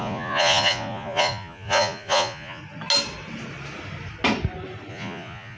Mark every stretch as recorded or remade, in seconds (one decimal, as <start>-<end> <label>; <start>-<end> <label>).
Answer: 0.0-2.6 remade; 2.6-4.9 recorded; 4.9-5.6 remade